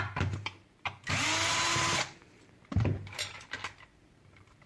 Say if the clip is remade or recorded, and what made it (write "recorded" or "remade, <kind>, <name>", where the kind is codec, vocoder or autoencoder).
remade, vocoder, BigVGAN v2